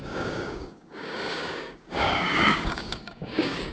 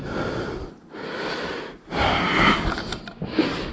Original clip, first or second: second